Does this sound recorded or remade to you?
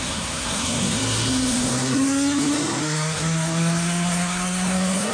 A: remade